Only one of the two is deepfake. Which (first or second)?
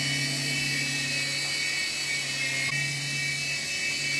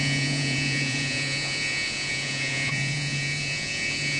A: second